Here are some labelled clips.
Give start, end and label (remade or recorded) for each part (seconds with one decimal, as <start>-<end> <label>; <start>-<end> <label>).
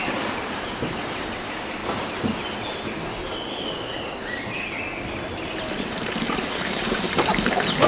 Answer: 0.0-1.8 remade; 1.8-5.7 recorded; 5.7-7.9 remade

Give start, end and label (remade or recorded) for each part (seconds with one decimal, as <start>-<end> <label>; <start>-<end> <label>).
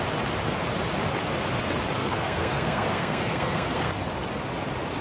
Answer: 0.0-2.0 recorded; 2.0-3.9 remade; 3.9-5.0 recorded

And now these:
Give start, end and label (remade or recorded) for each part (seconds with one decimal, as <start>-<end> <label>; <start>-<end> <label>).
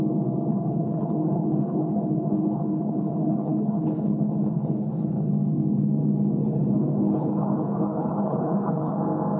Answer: 0.0-0.5 recorded; 0.5-5.3 remade; 5.3-6.4 recorded; 6.4-9.0 remade; 9.0-9.4 recorded